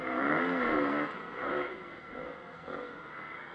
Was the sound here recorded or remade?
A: remade